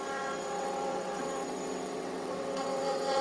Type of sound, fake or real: fake